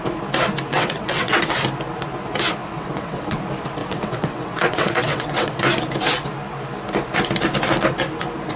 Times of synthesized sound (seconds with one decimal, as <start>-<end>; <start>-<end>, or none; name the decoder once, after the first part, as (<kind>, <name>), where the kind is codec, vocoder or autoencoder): 0.7-1.6 (vocoder, WaveNeXt); 2.6-3.4; 3.8-5.6

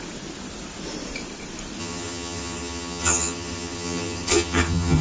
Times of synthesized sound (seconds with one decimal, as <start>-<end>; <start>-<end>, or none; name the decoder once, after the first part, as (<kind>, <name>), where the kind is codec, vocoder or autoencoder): 1.8-5.0 (vocoder, HiFi-GAN)